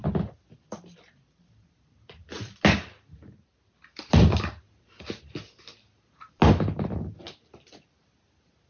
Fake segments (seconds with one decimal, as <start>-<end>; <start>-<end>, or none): none